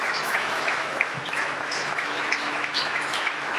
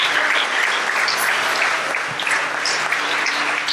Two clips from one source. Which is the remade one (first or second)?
first